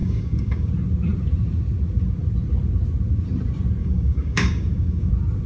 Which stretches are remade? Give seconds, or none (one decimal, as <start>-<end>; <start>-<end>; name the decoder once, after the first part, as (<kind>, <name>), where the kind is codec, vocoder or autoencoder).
0.0-0.7 (codec, DAC); 3.8-5.1